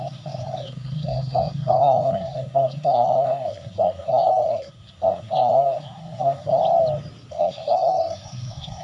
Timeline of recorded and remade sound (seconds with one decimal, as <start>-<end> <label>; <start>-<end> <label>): 0.0-6.6 remade; 6.6-7.3 recorded; 7.3-8.8 remade